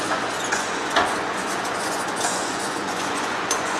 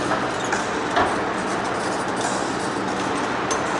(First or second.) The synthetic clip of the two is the first